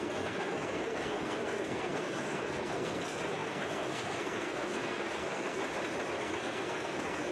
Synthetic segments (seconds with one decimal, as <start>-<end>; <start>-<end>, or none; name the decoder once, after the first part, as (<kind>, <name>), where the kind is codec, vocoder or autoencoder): 0.0-5.6 (codec, SNAC); 6.2-7.3